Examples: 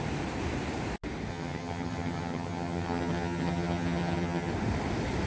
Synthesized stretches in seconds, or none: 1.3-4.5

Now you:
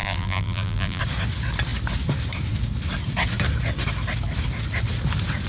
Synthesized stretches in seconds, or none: 0.0-1.0

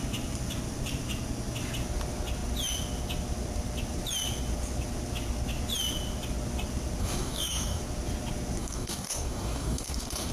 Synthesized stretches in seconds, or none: 7.0-7.8; 8.6-10.3